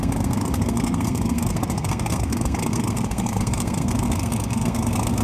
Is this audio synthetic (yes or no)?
yes